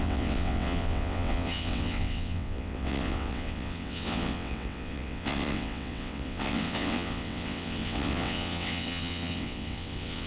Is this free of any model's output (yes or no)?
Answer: no